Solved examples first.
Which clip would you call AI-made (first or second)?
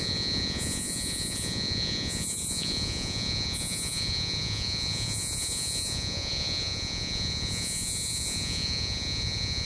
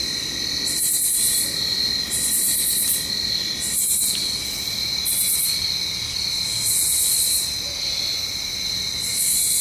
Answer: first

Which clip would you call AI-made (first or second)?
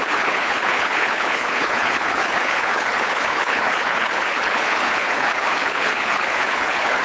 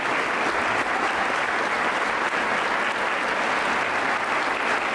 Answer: first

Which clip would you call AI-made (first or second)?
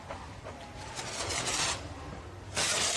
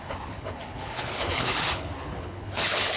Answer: second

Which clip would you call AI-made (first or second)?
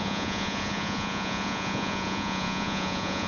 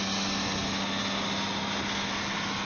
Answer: first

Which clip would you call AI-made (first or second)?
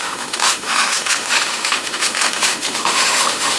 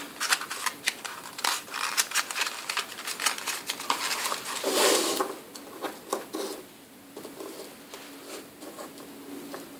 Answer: first